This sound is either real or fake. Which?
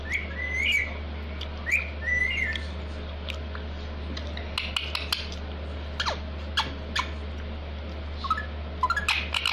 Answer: real